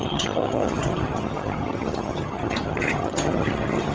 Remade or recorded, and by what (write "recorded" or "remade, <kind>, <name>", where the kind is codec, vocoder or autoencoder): remade, vocoder, HiFi-GAN